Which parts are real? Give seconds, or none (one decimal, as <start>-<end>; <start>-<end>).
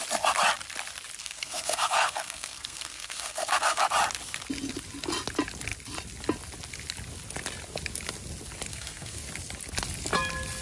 0.0-1.2; 3.8-8.7; 9.2-10.6